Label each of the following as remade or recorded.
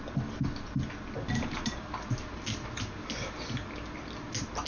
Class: recorded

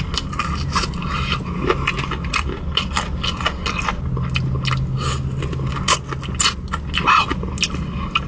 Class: recorded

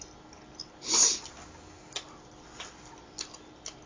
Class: recorded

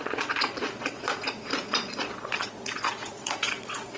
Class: remade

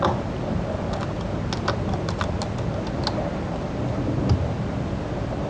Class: recorded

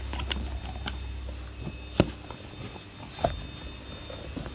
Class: recorded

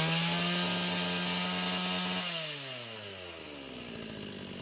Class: recorded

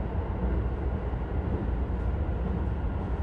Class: recorded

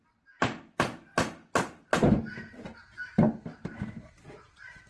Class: recorded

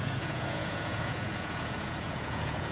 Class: remade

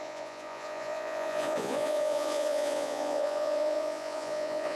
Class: remade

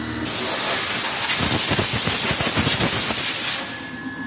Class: recorded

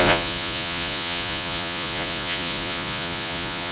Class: remade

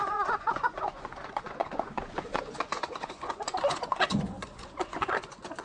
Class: remade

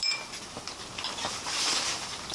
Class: recorded